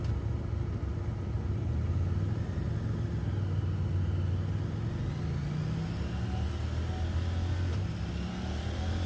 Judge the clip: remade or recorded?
recorded